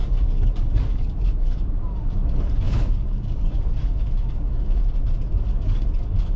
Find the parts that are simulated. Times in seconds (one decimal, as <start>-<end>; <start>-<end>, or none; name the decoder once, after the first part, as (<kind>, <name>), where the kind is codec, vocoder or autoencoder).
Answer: 0.0-4.8 (codec, DAC); 5.3-6.4

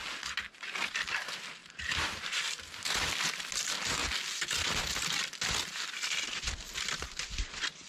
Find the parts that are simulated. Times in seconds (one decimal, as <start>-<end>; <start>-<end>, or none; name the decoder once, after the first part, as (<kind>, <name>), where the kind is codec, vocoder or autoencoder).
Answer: 1.6-3.1 (vocoder, BigVGAN v2)

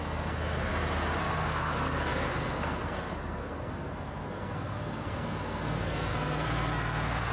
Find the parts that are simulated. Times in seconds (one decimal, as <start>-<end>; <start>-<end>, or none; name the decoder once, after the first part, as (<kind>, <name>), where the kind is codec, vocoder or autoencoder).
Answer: 0.0-0.7 (codec, SNAC); 1.2-7.3

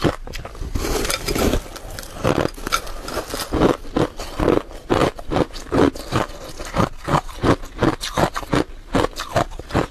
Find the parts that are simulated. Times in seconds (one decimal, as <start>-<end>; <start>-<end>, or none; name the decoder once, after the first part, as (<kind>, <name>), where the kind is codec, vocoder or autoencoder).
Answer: 5.0-6.3 (vocoder, BigVGAN v2)

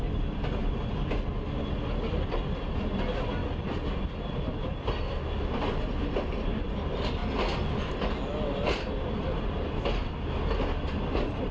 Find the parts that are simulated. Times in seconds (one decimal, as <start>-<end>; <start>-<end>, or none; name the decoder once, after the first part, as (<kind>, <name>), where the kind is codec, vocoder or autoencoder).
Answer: none

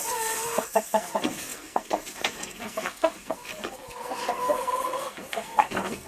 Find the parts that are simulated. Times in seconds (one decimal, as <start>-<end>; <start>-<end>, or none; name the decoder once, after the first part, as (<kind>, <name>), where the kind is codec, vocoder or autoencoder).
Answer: 0.0-6.1 (codec, SNAC)

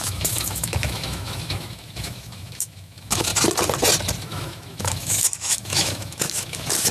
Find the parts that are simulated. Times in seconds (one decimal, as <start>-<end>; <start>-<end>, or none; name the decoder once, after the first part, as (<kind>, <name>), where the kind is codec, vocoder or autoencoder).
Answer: 0.0-3.3 (autoencoder, DAC-VAE); 4.2-6.9